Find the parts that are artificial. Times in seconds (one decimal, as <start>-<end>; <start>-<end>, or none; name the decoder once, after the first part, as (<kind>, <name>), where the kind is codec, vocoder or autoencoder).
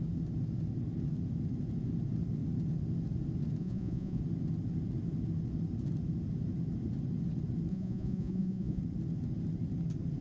3.6-4.2 (vocoder, Vocos); 7.7-8.8